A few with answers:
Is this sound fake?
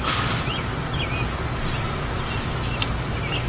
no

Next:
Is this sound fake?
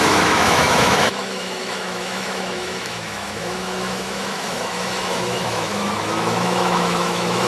yes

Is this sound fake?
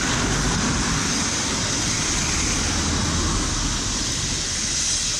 no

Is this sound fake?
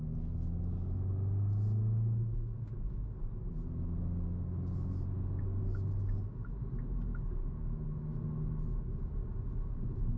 no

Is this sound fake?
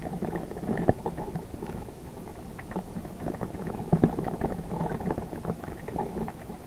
yes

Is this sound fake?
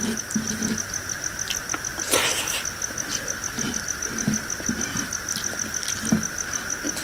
no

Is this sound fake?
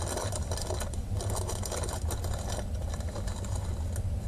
no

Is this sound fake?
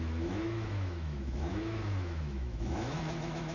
yes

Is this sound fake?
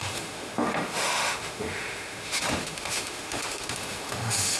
yes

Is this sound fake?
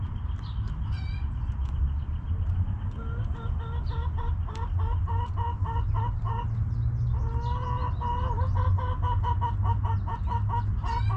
no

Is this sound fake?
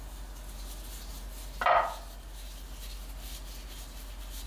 no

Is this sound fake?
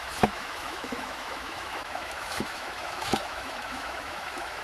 yes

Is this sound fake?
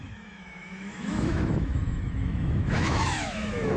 yes